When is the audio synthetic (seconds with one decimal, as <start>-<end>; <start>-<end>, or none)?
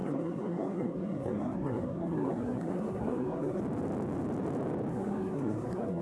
0.0-3.6; 4.9-6.0